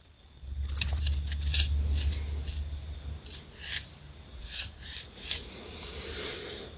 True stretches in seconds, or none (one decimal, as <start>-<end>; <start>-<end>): 0.0-4.3; 5.7-6.8